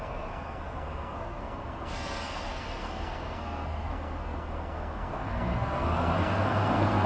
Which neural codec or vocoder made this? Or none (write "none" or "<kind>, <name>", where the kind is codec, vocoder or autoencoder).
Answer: codec, SNAC